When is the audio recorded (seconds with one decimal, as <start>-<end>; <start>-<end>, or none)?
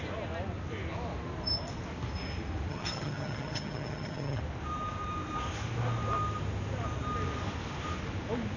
0.0-2.7; 4.4-8.6